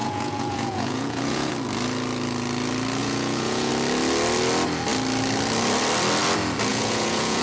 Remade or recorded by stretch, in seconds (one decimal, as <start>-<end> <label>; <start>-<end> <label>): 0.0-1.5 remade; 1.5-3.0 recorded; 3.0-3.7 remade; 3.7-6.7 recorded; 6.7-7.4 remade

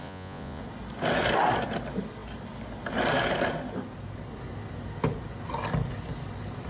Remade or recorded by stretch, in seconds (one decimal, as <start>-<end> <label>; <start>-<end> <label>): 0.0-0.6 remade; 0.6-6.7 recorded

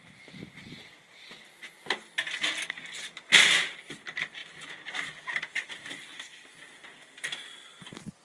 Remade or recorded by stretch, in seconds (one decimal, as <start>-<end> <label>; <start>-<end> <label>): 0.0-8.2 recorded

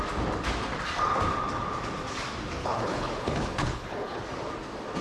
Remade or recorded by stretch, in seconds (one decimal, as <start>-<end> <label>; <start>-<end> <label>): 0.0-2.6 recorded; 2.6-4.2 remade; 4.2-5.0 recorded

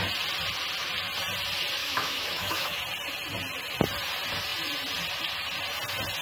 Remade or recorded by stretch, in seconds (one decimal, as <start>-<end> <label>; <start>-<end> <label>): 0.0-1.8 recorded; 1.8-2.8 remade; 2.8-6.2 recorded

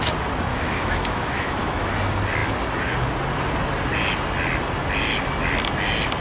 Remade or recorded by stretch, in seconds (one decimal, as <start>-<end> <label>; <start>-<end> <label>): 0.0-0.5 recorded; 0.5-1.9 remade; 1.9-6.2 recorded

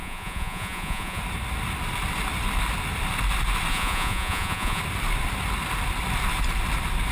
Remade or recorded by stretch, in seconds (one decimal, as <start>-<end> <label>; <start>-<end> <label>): 0.0-1.2 remade; 1.2-3.7 recorded; 3.7-4.8 remade; 4.8-7.1 recorded

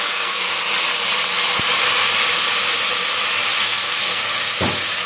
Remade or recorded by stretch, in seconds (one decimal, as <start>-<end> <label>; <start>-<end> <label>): 0.0-0.5 remade; 0.5-3.6 recorded; 3.6-4.2 remade; 4.2-5.1 recorded